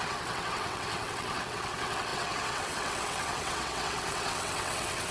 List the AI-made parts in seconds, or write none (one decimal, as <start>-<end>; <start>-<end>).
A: 0.0-5.1